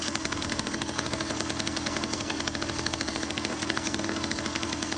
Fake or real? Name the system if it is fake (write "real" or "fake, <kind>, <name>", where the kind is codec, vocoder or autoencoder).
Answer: fake, codec, SNAC